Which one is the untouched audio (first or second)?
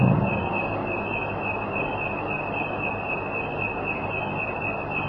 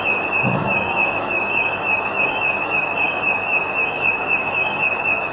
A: first